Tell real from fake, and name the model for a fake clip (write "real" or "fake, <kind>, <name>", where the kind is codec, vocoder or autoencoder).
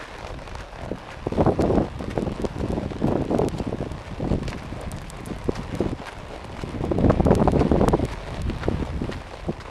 real